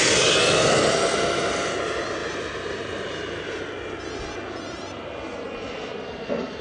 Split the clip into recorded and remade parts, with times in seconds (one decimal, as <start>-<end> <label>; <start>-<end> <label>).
0.0-2.2 recorded; 2.2-3.6 remade; 3.6-5.3 recorded; 5.3-5.8 remade; 5.8-6.6 recorded